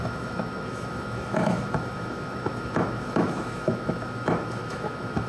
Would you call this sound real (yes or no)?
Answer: no